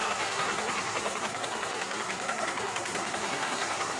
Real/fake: fake